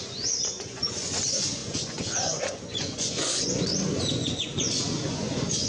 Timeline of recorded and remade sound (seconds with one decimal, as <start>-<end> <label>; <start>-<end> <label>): 0.0-5.7 remade